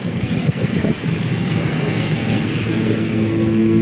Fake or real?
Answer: fake